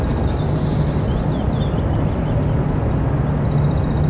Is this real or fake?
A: real